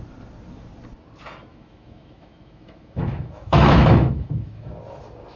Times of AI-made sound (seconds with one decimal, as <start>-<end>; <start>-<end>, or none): 1.5-4.7